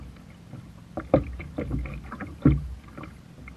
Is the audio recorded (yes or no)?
yes